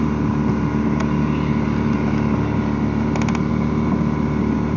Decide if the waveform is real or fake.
real